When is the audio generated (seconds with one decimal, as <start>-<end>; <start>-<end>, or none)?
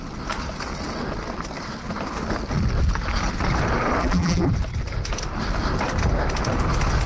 4.0-4.5